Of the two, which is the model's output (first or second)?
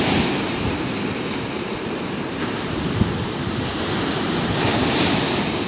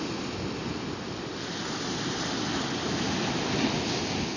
first